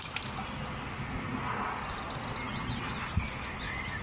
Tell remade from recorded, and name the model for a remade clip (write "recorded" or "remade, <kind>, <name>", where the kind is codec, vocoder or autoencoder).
recorded